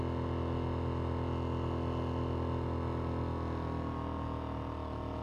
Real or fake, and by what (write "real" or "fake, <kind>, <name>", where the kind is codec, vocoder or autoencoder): real